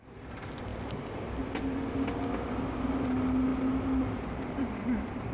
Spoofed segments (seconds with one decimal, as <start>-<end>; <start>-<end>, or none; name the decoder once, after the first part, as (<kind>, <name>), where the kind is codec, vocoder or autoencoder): none